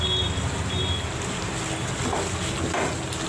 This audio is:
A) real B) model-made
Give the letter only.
A